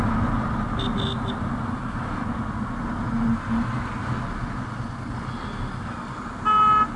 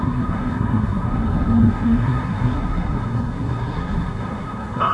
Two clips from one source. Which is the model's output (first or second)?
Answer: second